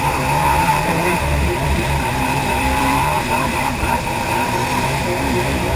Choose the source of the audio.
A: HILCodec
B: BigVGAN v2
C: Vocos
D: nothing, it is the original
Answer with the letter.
B